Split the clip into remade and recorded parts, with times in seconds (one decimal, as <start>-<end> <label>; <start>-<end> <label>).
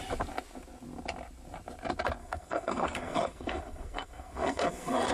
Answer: 0.0-2.2 recorded; 2.2-5.1 remade